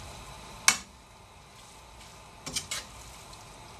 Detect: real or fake real